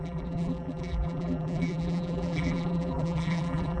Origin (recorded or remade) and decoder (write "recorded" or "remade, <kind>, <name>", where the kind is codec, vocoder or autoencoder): remade, vocoder, BigVGAN v2